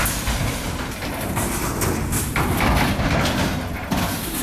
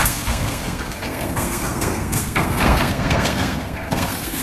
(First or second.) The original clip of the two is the first